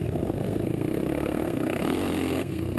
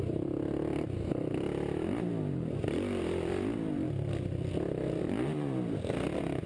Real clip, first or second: second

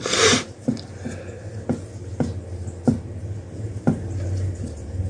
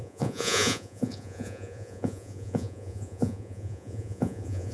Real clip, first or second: first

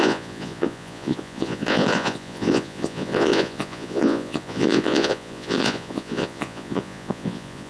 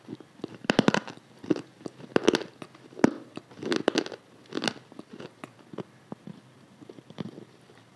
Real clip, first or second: second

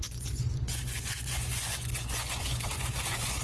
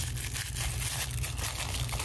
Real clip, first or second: second